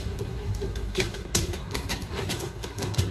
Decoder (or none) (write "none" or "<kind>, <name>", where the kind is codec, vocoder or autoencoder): codec, SNAC